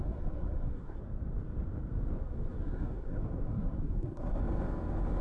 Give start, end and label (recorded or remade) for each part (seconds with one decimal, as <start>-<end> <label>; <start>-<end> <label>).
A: 0.0-1.0 remade; 1.0-2.2 recorded; 2.2-4.4 remade; 4.4-5.2 recorded